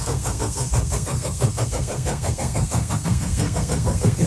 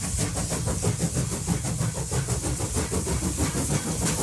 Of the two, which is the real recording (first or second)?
second